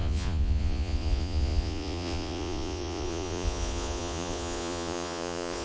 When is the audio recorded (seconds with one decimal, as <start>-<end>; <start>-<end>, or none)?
none